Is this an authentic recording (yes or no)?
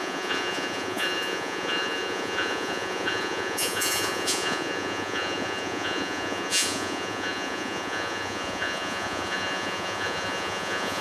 no